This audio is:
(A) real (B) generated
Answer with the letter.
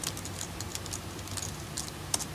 A